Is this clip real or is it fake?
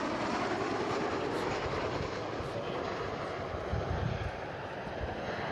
real